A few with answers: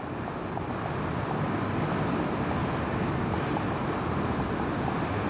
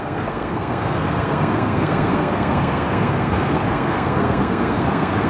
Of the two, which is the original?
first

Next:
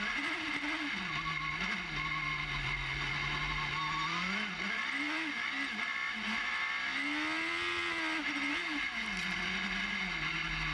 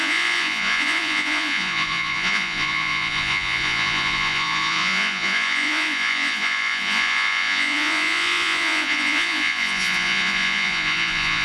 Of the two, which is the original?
first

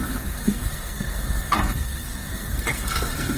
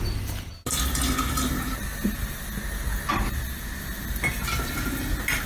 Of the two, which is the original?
second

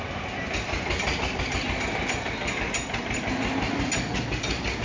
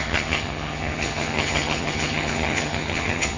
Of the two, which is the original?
first